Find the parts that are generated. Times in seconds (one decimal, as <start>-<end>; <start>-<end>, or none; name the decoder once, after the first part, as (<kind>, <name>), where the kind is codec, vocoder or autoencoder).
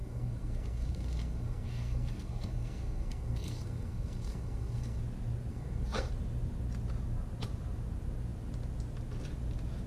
0.0-5.0 (codec, SNAC); 5.5-6.1